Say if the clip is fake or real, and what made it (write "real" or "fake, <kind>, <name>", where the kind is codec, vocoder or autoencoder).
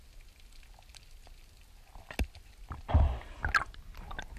real